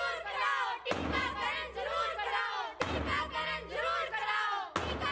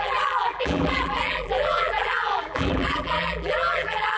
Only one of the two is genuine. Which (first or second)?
first